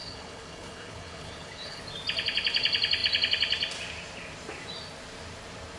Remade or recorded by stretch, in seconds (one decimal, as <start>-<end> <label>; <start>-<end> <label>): 0.0-1.8 remade; 1.8-5.8 recorded

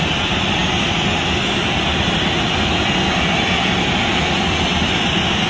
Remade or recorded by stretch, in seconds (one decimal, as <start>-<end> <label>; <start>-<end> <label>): 0.0-5.5 recorded

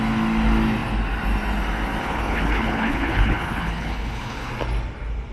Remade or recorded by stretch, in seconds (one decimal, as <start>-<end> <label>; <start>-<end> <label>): 0.0-2.0 recorded; 2.0-4.5 remade; 4.5-5.3 recorded

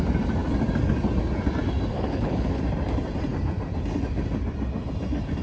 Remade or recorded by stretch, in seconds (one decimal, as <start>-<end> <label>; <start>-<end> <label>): 0.0-1.9 recorded; 1.9-2.6 remade; 2.6-5.4 recorded

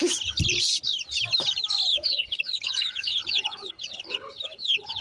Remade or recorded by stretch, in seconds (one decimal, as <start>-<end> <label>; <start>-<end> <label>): 0.0-1.9 recorded; 1.9-5.0 remade

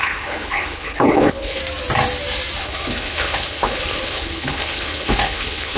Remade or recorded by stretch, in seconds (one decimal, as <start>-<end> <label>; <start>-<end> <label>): 0.0-1.6 remade; 1.6-2.6 recorded; 2.6-5.8 remade

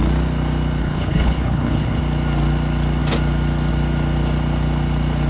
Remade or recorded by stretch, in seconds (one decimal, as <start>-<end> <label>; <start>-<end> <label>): 0.0-0.8 recorded; 0.8-2.0 remade; 2.0-5.3 recorded

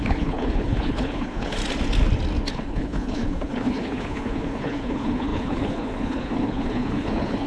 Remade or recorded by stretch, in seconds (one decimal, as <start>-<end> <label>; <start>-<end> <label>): 0.0-1.6 remade; 1.6-2.5 recorded; 2.5-7.5 remade